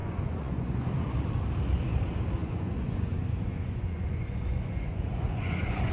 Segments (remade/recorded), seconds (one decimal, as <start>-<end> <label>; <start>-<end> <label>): 0.0-0.9 remade; 0.9-2.4 recorded; 2.4-5.9 remade